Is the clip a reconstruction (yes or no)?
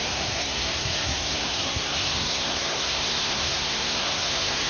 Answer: yes